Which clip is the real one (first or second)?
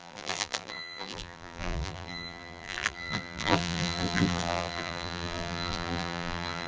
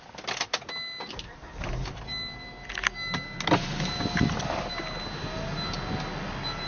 second